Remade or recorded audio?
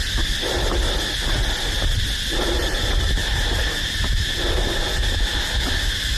recorded